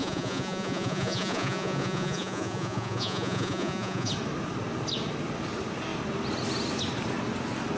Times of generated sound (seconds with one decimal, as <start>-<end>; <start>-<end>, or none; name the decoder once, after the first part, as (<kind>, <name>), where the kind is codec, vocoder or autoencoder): 0.0-4.1 (vocoder, Vocos)